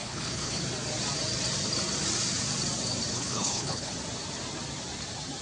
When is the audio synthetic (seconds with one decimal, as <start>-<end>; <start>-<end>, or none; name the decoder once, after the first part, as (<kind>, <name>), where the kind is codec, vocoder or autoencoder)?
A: 0.0-0.6 (codec, HILCodec); 3.1-3.9